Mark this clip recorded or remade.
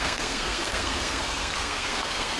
remade